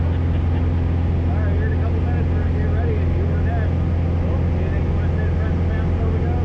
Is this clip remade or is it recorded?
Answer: recorded